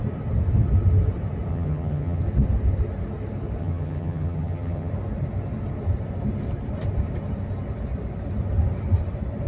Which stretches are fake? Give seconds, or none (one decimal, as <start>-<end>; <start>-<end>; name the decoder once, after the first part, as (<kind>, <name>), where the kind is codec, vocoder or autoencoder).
1.5-2.2 (vocoder, HiFi-GAN); 3.6-4.9